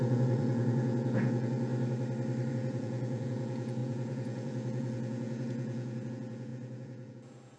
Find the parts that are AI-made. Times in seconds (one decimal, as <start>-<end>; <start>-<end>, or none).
0.0-1.7; 2.5-7.6